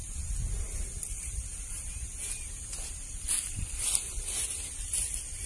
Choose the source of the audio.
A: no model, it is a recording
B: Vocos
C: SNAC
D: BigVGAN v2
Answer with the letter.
A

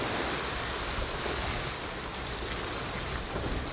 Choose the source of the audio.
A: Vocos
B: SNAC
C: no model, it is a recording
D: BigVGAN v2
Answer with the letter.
C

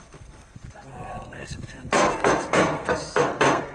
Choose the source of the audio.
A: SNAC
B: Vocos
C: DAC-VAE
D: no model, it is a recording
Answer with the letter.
A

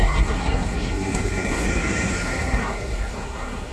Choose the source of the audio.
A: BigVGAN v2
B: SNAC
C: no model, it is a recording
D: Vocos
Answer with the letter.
B